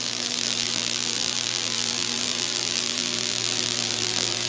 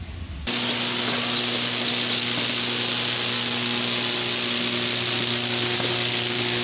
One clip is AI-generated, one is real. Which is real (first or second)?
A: second